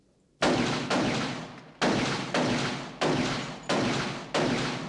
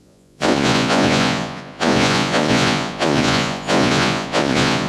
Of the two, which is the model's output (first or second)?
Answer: second